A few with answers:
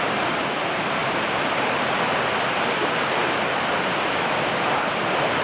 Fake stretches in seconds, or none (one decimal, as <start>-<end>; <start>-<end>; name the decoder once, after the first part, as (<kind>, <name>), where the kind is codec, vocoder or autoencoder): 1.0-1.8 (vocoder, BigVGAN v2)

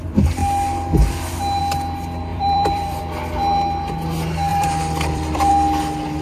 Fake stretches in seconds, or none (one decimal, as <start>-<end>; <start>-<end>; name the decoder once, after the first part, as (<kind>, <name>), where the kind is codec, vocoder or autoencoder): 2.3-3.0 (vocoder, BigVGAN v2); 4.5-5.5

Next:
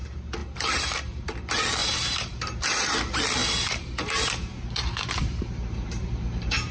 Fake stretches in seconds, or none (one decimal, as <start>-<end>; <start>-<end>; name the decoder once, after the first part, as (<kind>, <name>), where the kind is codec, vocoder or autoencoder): 0.4-1.2 (vocoder, BigVGAN v2); 1.8-2.9; 3.4-6.7